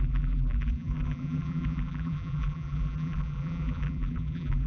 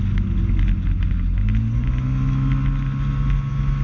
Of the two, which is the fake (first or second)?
first